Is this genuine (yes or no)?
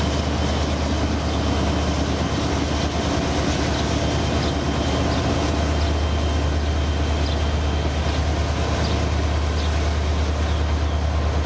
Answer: yes